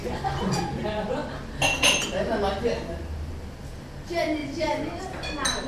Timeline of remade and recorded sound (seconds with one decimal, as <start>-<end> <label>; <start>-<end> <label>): 0.0-5.7 recorded